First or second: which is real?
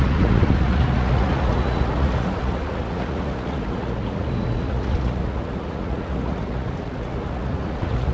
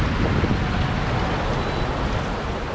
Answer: second